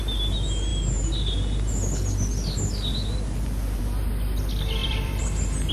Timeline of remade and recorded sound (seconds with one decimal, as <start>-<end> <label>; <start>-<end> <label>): 0.0-4.8 recorded; 4.8-5.7 remade

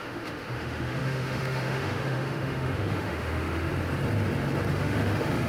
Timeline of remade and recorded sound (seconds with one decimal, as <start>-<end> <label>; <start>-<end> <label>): 0.0-3.7 remade; 3.7-4.7 recorded; 4.7-5.5 remade

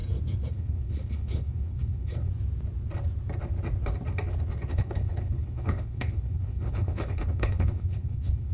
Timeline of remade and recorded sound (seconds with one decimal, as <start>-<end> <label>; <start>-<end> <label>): 0.0-0.5 recorded; 0.5-2.3 remade; 2.3-4.7 recorded; 4.7-8.5 remade

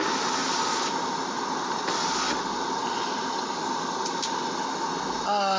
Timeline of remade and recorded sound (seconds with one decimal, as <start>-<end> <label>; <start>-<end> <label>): 0.0-5.6 recorded

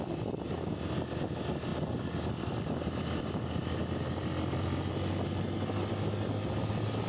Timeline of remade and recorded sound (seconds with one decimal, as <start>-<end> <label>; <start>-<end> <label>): 0.0-7.1 recorded